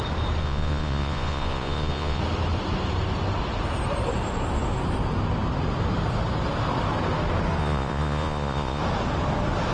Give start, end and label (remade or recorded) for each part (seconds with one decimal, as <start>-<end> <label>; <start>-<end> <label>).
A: 0.0-0.4 recorded; 0.4-2.2 remade; 2.2-7.6 recorded; 7.6-8.8 remade; 8.8-9.7 recorded